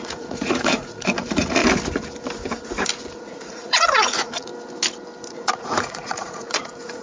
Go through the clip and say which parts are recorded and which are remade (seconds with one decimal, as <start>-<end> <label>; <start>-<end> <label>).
0.0-1.6 remade; 1.6-3.1 recorded; 3.1-4.5 remade; 4.5-5.3 recorded; 5.3-7.0 remade